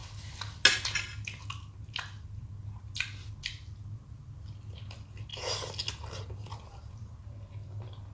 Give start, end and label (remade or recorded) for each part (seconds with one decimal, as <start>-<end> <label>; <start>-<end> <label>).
0.0-8.1 recorded